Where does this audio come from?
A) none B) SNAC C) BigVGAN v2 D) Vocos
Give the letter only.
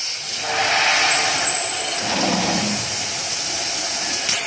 A